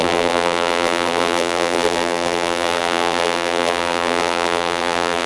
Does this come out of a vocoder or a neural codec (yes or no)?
yes